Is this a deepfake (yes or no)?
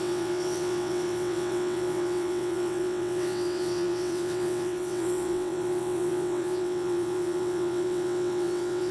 yes